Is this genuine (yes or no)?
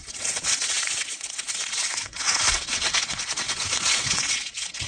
no